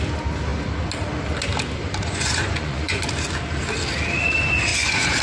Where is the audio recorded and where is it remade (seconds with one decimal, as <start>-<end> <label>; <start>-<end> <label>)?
0.0-2.0 recorded; 2.0-3.0 remade; 3.0-4.7 recorded; 4.7-5.2 remade